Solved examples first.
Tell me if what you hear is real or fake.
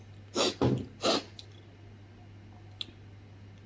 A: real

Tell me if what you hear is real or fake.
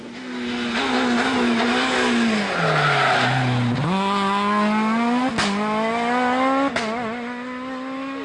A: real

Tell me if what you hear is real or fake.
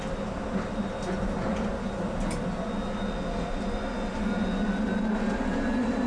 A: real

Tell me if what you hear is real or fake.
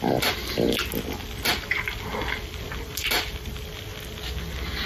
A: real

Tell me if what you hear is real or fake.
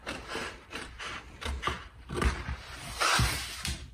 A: fake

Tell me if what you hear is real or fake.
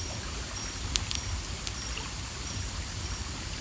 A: real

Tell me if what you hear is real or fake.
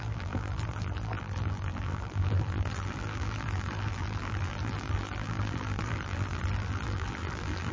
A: fake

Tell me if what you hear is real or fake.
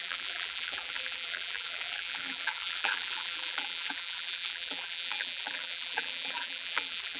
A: fake